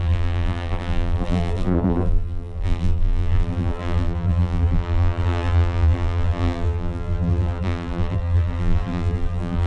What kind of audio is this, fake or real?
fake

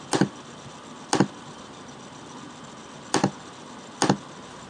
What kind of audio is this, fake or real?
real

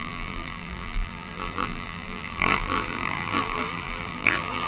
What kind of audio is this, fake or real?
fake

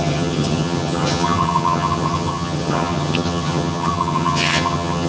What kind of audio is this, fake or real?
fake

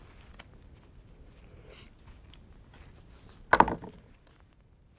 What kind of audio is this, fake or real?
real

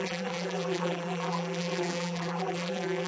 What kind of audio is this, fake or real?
fake